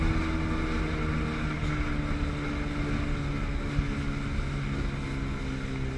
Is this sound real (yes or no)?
yes